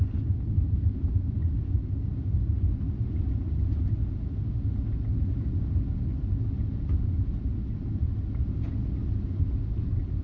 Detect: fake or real real